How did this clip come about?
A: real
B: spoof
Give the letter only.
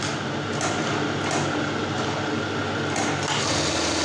A